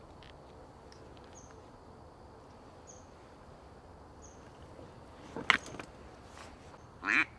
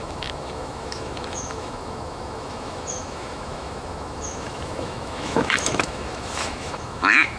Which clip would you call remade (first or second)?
second